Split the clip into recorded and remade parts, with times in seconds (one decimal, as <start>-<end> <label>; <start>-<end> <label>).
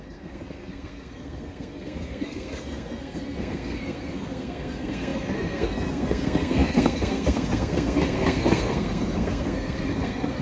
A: 0.0-10.4 remade